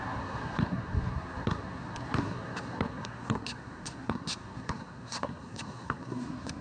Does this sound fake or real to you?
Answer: fake